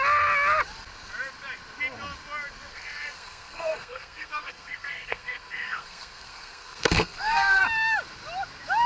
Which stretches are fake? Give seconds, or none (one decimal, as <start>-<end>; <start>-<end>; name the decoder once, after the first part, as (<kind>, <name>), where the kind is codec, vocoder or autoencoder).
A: 2.7-7.6 (codec, SNAC)